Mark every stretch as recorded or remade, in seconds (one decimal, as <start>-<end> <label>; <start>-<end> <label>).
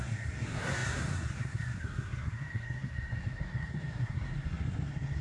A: 0.0-5.2 remade